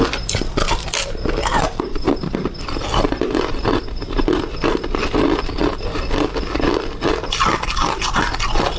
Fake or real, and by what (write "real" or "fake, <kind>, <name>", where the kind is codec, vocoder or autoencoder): real